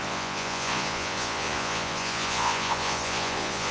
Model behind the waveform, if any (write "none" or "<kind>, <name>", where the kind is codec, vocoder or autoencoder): vocoder, Vocos